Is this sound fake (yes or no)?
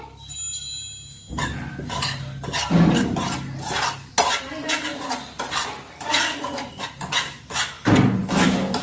no